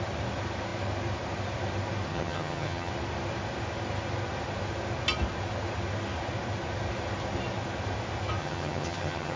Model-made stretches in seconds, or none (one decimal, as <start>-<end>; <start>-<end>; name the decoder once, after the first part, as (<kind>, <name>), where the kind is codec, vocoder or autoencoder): 2.1-2.9 (vocoder, HiFi-GAN); 8.4-9.4